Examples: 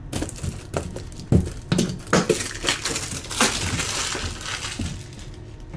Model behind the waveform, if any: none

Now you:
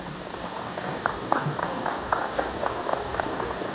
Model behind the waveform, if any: codec, DAC